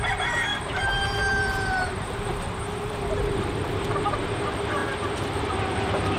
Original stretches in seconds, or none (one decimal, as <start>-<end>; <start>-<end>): none